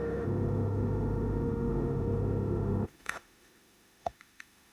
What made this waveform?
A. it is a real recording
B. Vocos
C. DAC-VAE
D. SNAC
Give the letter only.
C